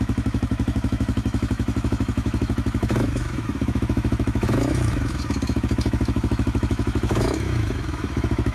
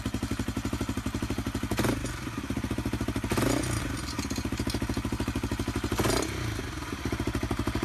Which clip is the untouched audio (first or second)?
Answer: second